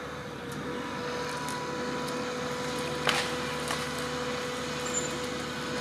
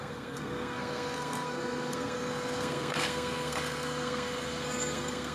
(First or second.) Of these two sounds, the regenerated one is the second